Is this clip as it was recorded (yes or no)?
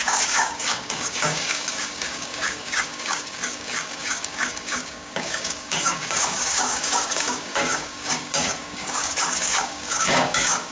no